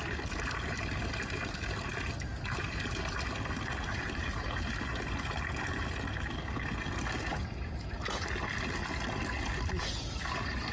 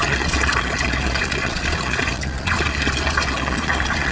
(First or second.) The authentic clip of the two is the first